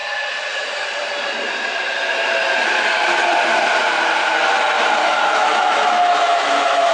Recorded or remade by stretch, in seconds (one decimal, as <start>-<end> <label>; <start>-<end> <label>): 0.0-5.0 recorded; 5.0-6.9 remade

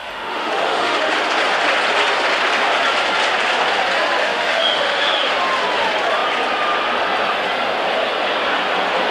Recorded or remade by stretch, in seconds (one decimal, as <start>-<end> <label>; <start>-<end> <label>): 0.0-1.1 remade; 1.1-4.2 recorded; 4.2-5.3 remade; 5.3-9.1 recorded

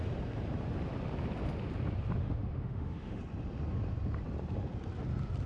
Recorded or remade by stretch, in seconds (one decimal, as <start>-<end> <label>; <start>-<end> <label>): 0.0-2.2 recorded; 2.2-3.2 remade; 3.2-5.5 recorded